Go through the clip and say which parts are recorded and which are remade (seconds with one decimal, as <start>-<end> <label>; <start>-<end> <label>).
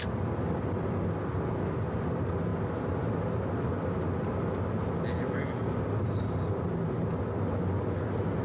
0.0-8.4 recorded